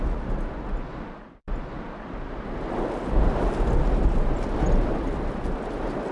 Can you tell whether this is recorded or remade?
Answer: recorded